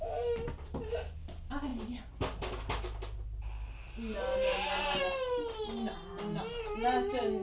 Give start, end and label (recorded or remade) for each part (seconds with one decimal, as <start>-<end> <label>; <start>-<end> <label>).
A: 0.0-7.4 recorded